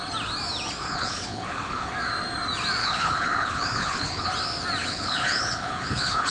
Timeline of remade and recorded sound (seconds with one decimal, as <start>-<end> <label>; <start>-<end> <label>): 0.0-0.8 recorded; 0.8-1.9 remade; 1.9-2.8 recorded; 2.8-4.3 remade; 4.3-4.8 recorded; 4.8-6.3 remade